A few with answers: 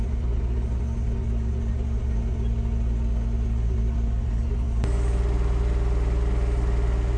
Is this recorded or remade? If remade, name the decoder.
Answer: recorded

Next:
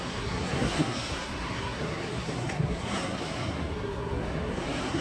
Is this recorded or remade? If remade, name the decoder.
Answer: remade, codec, SNAC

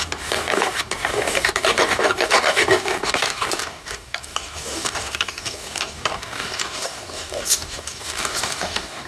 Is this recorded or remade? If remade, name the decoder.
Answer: remade, codec, DAC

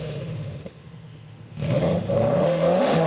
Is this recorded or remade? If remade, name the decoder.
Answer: remade, autoencoder, DAC-VAE